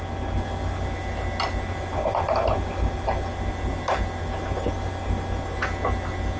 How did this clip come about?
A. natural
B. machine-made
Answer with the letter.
A